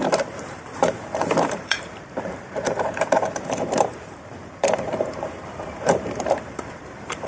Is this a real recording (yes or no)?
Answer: no